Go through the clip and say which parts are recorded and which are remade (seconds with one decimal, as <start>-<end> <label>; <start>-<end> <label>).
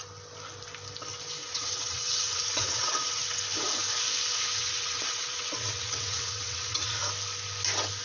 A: 0.0-1.4 recorded; 1.4-3.4 remade; 3.4-4.6 recorded; 4.6-7.0 remade; 7.0-8.0 recorded